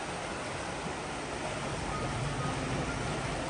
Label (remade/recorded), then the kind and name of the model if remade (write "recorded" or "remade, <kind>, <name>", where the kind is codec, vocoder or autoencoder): recorded